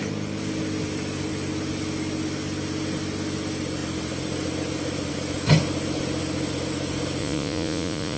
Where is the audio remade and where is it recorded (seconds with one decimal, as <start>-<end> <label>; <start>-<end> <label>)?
0.0-7.2 recorded; 7.2-8.2 remade